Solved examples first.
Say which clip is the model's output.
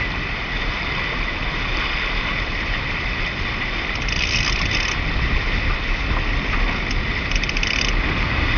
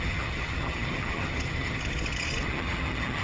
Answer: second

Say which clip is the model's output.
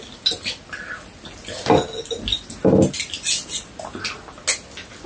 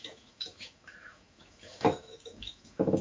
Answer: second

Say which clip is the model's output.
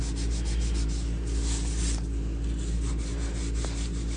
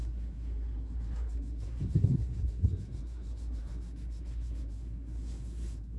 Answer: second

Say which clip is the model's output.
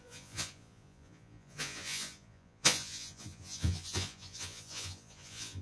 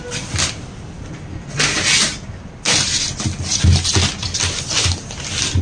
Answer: first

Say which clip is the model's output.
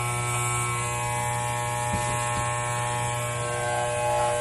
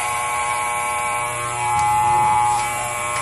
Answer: second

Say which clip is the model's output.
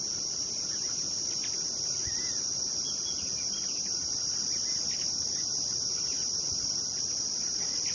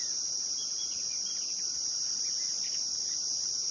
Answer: first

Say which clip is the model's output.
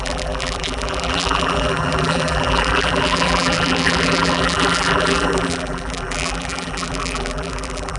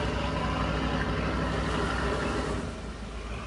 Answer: first